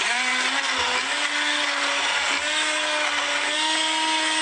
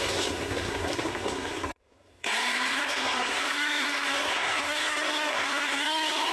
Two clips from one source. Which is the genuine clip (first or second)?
first